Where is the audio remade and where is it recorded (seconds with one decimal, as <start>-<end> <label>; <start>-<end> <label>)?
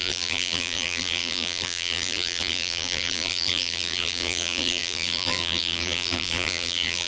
0.0-7.1 remade